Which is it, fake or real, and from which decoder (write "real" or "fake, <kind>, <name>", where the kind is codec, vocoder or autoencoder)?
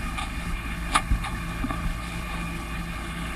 fake, codec, HILCodec